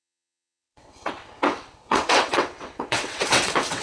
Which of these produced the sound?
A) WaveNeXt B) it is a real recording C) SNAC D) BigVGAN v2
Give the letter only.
A